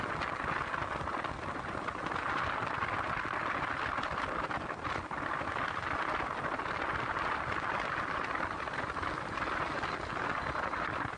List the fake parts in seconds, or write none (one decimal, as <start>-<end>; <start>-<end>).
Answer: none